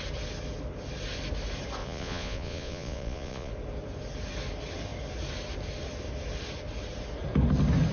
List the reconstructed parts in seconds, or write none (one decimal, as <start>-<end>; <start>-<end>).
1.8-3.5

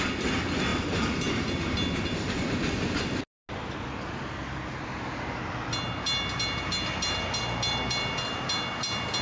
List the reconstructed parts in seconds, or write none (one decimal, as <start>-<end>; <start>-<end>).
none

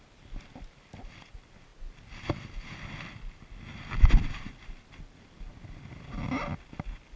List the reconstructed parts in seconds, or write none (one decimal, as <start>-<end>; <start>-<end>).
none

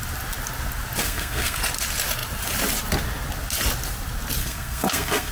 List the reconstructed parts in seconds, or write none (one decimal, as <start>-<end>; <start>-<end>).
1.0-1.6; 4.4-5.3

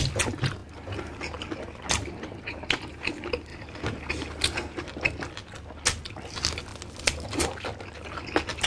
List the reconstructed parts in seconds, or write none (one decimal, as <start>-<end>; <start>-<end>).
none

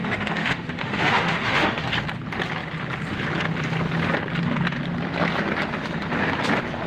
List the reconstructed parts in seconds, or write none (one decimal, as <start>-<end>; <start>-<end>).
0.0-1.9

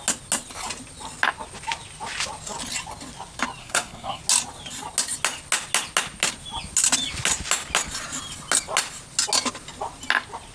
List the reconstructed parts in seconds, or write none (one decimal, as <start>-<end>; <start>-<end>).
3.6-4.2